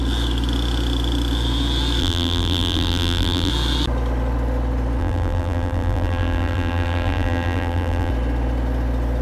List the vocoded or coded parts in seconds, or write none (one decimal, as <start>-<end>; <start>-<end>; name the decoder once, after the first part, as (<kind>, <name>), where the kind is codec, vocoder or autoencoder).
2.0-3.5 (vocoder, BigVGAN v2); 5.0-8.1